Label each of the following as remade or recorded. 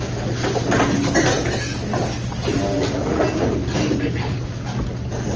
recorded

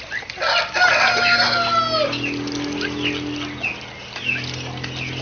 recorded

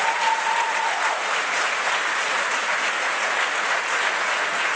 remade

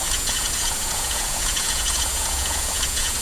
remade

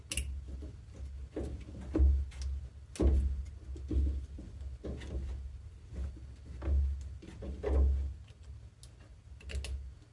recorded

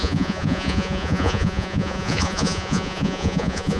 remade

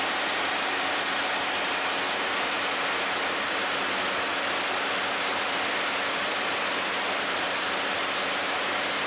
recorded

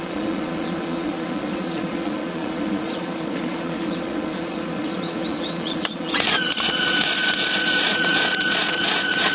remade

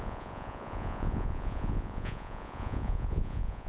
remade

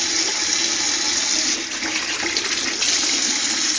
recorded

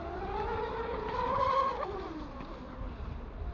recorded